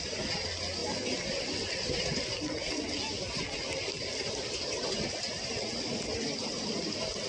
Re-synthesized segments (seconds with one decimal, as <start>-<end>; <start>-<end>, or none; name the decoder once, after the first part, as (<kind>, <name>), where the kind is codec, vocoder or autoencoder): none